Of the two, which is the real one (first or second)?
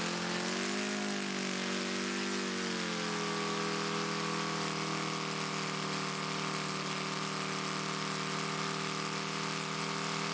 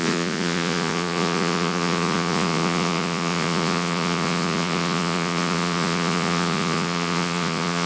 first